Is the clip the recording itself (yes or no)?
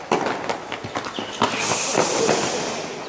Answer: yes